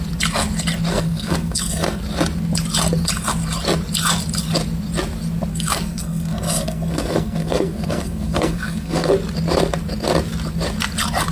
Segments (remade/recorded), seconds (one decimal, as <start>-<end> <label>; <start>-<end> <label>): 0.0-0.9 recorded; 0.9-2.0 remade; 2.0-5.5 recorded; 5.5-9.1 remade; 9.1-11.3 recorded